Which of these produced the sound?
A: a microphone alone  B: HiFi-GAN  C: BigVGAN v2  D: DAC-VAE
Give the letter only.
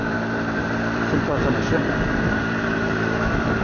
C